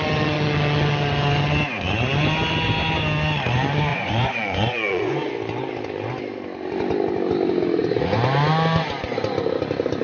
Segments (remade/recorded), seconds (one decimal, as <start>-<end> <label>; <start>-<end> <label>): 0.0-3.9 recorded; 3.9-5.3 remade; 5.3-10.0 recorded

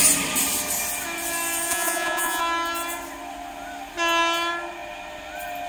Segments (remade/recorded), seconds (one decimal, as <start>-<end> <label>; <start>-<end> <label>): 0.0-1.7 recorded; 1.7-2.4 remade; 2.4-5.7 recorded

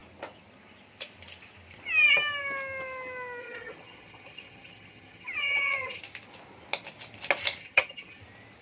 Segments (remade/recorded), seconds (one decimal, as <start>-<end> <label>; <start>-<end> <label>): 0.0-3.4 recorded; 3.4-6.0 remade; 6.0-7.6 recorded; 7.6-8.2 remade; 8.2-8.6 recorded